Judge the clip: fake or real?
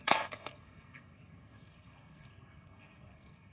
fake